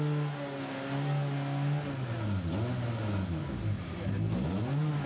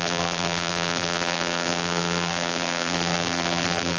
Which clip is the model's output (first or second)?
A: second